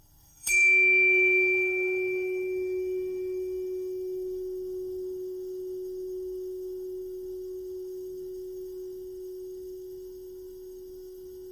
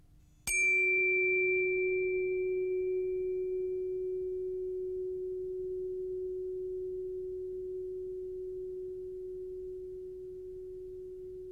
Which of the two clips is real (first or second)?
second